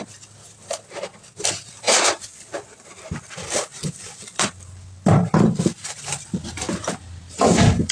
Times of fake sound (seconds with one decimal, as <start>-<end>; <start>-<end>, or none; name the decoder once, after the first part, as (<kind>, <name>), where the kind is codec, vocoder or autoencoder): 1.1-1.6 (vocoder, BigVGAN v2); 3.7-7.2